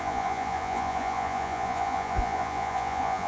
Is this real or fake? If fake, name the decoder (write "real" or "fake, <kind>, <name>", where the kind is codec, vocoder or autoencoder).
fake, vocoder, Vocos